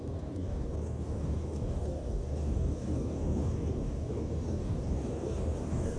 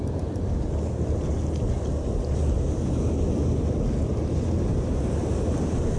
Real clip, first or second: second